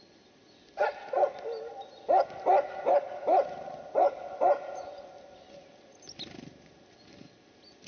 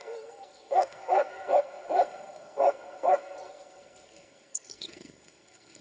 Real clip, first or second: first